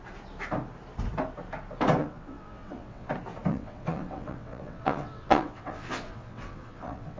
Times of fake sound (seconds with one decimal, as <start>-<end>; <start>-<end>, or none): 2.0-3.1; 3.5-7.2